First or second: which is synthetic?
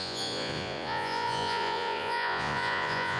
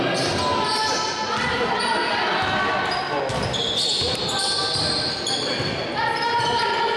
first